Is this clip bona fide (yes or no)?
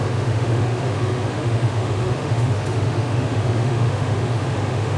no